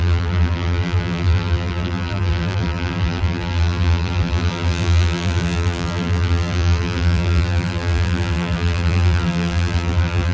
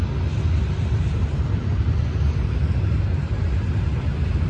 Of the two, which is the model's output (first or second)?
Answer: first